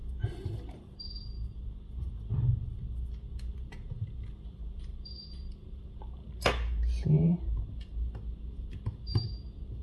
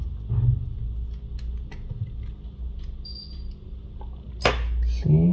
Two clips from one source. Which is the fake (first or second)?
first